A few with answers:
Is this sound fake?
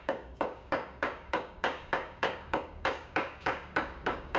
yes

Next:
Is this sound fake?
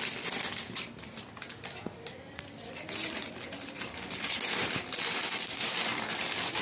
no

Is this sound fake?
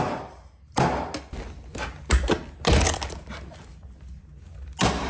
no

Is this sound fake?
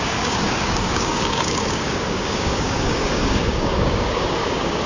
yes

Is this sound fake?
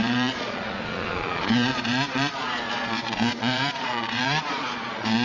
yes